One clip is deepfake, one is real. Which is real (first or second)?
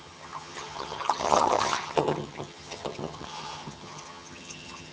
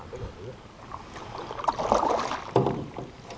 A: second